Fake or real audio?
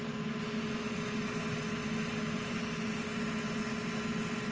real